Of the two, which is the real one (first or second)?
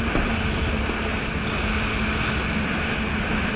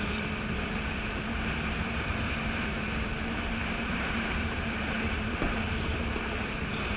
first